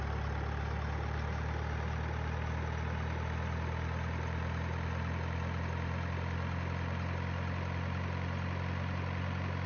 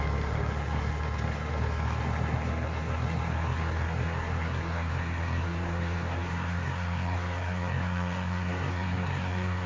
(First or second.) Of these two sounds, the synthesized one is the second